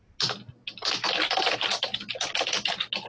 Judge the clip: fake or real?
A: real